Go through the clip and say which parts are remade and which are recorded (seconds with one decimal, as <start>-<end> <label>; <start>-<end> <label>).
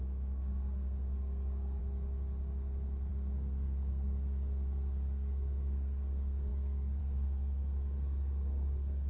0.0-1.8 remade; 1.8-3.1 recorded; 3.1-9.1 remade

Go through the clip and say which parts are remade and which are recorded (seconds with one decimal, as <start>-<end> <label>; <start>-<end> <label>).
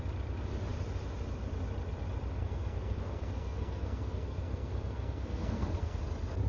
0.0-2.4 recorded; 2.4-6.0 remade; 6.0-6.5 recorded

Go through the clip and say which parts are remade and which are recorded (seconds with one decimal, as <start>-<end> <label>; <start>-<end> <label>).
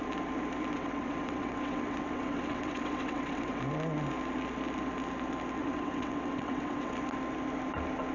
0.0-0.7 recorded; 0.7-3.6 remade; 3.6-5.6 recorded; 5.6-6.9 remade; 6.9-8.1 recorded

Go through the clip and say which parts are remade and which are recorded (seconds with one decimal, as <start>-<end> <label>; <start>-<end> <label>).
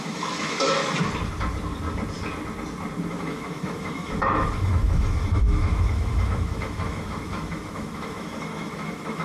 0.0-0.8 remade; 0.8-3.1 recorded; 3.1-9.2 remade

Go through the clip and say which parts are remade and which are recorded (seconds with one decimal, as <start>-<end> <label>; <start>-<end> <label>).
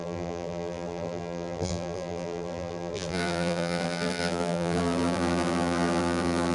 0.0-6.5 remade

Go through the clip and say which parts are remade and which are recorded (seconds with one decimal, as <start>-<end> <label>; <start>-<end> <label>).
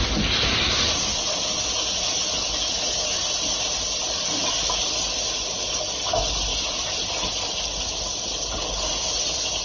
0.0-6.5 recorded; 6.5-7.1 remade; 7.1-9.6 recorded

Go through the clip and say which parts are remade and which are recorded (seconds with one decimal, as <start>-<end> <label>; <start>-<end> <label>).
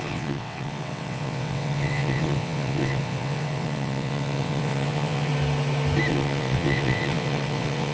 0.0-5.3 remade; 5.3-6.1 recorded; 6.1-7.9 remade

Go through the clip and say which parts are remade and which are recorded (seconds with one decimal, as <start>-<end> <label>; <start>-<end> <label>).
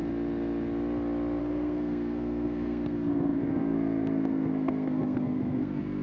0.0-1.4 recorded; 1.4-6.0 remade